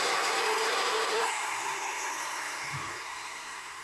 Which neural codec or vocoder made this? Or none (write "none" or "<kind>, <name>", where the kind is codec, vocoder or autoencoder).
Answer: codec, SNAC